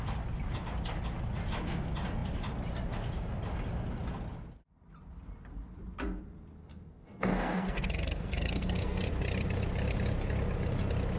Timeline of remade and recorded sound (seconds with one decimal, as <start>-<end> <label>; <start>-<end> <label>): 0.0-6.7 recorded; 6.7-9.1 remade; 9.1-11.2 recorded